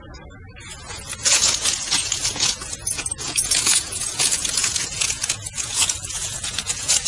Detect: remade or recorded remade